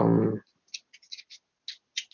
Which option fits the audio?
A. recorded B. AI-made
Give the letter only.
A